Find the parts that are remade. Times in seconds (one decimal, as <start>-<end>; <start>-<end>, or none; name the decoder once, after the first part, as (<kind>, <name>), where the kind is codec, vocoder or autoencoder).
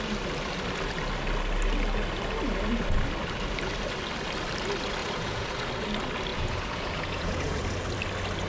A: 5.0-5.7 (vocoder, Vocos); 6.3-7.6